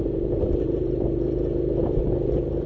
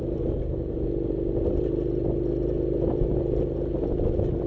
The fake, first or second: first